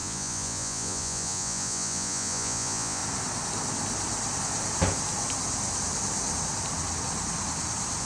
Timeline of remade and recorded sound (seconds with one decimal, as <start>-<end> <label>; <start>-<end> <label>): 0.0-3.0 remade; 3.0-8.0 recorded